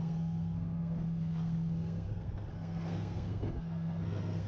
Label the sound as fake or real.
fake